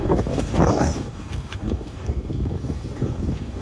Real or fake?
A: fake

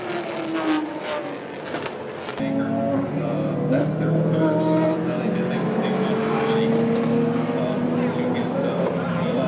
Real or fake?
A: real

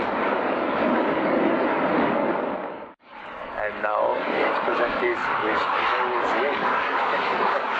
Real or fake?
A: fake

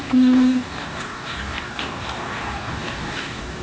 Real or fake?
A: fake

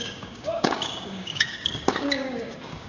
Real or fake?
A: fake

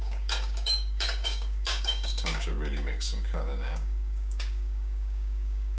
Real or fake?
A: fake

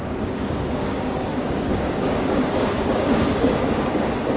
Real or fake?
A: fake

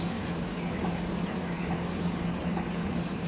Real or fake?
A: fake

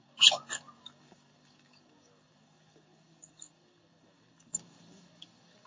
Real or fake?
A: fake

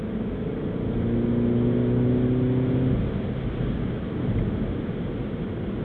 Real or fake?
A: real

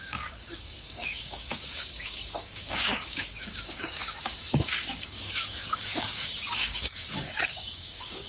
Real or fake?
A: fake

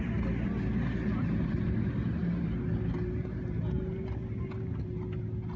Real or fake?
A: real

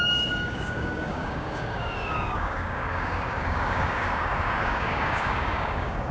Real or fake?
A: fake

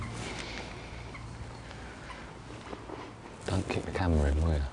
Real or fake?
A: real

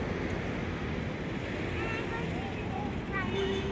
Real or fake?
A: real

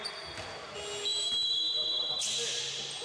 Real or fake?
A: real